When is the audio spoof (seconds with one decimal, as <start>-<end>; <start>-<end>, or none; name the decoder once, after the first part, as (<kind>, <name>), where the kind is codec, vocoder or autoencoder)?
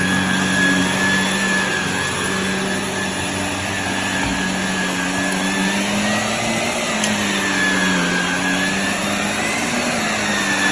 none